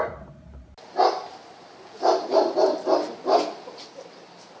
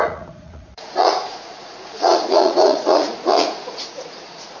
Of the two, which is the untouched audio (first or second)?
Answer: first